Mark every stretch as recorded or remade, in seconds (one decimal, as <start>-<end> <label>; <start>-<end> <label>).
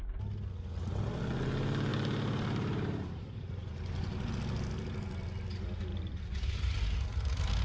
0.0-1.9 recorded; 1.9-4.3 remade; 4.3-5.9 recorded; 5.9-6.8 remade; 6.8-7.6 recorded